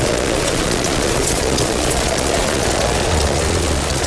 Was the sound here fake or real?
fake